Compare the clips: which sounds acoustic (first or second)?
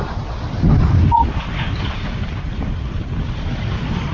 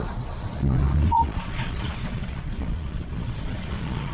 first